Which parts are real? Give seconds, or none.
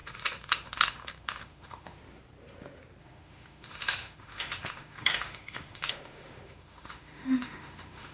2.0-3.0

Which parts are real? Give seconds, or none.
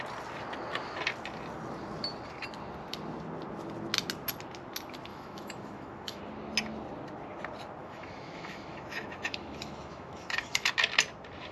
0.0-5.1; 6.2-7.8; 10.7-11.5